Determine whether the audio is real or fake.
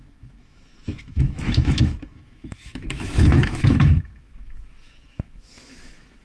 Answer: fake